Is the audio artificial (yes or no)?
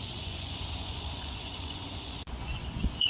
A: yes